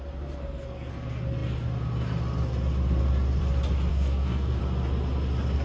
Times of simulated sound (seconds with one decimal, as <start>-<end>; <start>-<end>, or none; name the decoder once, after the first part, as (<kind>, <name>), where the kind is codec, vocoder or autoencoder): 0.4-0.9 (codec, SNAC); 3.9-4.6